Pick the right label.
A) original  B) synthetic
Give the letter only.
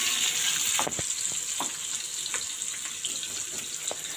A